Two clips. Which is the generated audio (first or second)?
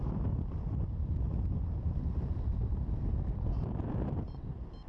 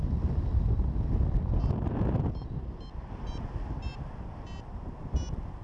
first